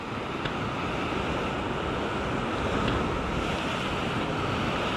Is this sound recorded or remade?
recorded